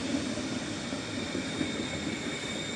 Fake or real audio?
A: real